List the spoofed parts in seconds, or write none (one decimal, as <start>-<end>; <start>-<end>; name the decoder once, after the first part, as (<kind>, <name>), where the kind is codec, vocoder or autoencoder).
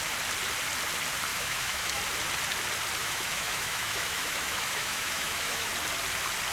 1.3-2.0 (autoencoder, DAC-VAE); 3.0-5.7